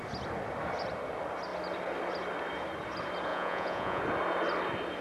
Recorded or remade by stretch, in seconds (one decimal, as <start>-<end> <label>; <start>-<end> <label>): 0.0-3.3 recorded; 3.3-4.0 remade; 4.0-5.0 recorded